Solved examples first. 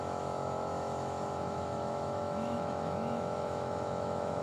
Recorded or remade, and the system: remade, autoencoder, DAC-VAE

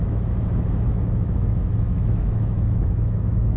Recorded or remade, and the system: remade, autoencoder, DAC-VAE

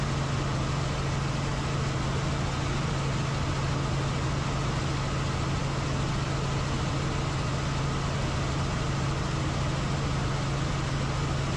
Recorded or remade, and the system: recorded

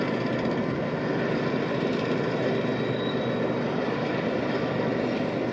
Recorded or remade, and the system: recorded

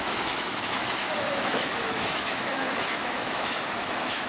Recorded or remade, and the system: remade, autoencoder, DAC-VAE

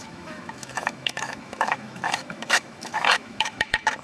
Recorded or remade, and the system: remade, autoencoder, DAC-VAE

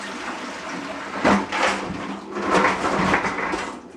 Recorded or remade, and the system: recorded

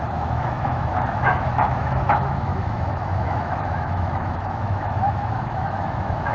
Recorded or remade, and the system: remade, autoencoder, DAC-VAE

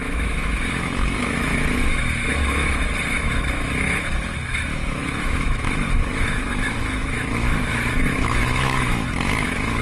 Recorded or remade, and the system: remade, autoencoder, DAC-VAE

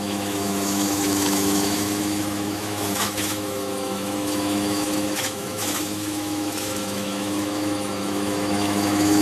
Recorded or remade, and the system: remade, autoencoder, DAC-VAE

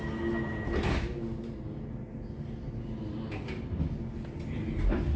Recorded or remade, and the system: recorded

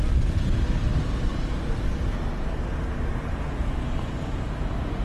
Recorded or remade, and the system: recorded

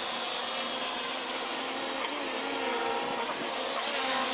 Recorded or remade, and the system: recorded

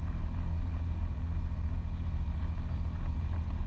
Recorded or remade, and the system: recorded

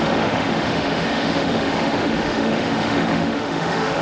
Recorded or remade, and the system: remade, autoencoder, DAC-VAE